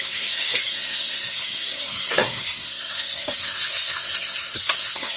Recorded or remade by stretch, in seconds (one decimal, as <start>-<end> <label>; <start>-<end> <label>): 0.0-5.2 remade